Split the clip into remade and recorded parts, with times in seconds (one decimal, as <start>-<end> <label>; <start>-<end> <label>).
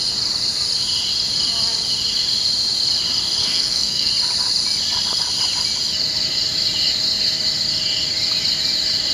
0.0-3.4 recorded; 3.4-4.1 remade; 4.1-9.1 recorded